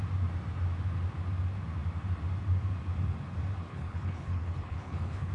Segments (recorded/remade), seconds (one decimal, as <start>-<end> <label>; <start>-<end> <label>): 0.0-3.7 recorded; 3.7-5.3 remade